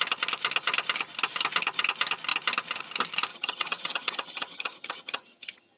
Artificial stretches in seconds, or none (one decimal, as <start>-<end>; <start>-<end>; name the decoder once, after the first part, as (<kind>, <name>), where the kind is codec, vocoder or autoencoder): 3.3-5.8 (vocoder, HiFi-GAN)